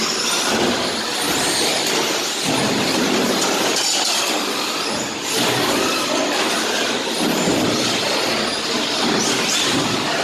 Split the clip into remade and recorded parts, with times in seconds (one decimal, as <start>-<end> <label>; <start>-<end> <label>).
0.0-10.2 recorded